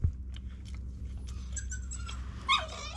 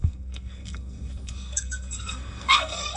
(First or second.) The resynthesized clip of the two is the second